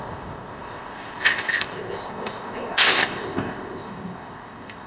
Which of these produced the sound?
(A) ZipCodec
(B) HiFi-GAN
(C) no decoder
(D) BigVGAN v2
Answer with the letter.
A